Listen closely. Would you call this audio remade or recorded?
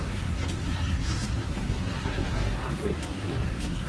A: remade